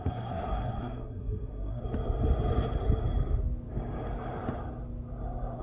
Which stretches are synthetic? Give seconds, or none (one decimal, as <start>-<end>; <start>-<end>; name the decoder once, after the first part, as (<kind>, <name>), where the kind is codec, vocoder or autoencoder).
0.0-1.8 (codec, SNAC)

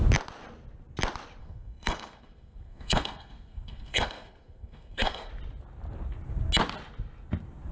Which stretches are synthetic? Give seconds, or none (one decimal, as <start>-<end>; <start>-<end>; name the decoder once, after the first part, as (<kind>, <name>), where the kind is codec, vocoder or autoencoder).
1.4-5.3 (codec, SNAC)

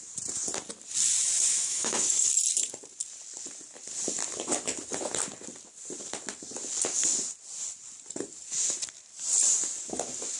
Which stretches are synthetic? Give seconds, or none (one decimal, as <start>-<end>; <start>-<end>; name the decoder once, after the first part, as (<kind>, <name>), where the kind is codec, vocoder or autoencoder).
1.5-2.3 (autoencoder, DAC-VAE)

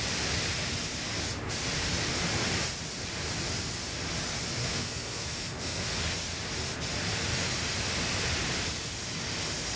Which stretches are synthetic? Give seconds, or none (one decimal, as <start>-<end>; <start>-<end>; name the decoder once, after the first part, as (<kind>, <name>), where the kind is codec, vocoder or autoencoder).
4.6-6.0 (codec, SNAC)